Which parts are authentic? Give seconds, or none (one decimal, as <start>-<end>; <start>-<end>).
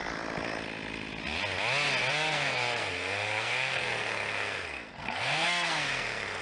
0.0-2.1